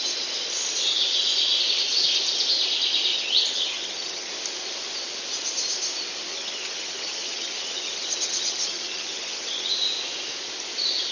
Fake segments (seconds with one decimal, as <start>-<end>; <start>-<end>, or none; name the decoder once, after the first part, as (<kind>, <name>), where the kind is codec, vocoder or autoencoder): 3.1-4.3 (vocoder, HiFi-GAN); 6.3-9.7